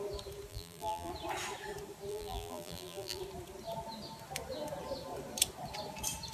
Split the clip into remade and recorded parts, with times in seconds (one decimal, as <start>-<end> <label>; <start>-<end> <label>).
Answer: 0.0-0.5 recorded; 0.5-1.1 remade; 1.1-2.1 recorded; 2.1-3.2 remade; 3.2-6.3 recorded